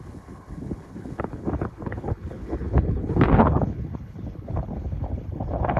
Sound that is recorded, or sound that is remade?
remade